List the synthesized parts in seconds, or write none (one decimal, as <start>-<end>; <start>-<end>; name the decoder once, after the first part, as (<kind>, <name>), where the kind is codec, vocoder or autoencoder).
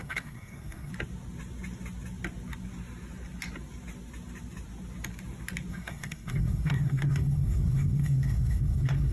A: 0.0-0.9 (codec, SNAC); 5.7-9.1